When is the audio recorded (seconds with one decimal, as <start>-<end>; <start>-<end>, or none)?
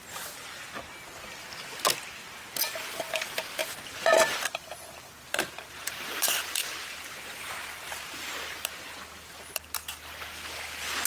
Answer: 0.0-3.6; 7.5-11.1